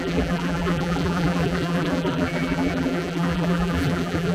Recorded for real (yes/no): no